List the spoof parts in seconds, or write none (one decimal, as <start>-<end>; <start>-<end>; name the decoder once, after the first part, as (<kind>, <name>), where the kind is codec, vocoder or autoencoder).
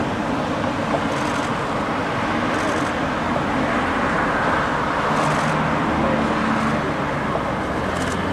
none